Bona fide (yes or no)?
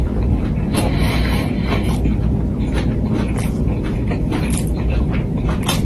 no